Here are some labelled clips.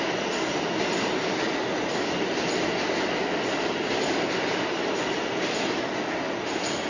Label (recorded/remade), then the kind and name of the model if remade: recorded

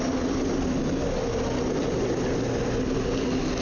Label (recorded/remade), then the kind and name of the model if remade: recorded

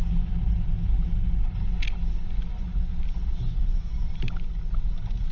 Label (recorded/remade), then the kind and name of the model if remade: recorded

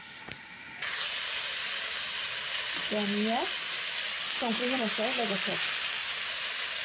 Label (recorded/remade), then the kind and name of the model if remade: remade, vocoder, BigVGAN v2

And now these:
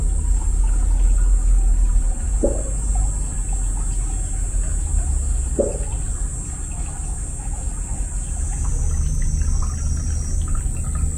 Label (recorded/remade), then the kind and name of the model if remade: recorded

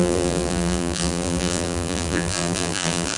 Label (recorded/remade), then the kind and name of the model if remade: remade, vocoder, BigVGAN v2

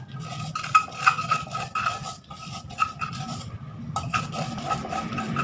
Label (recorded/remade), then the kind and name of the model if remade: recorded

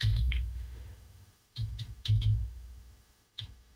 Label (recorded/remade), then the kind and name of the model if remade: remade, autoencoder, DAC-VAE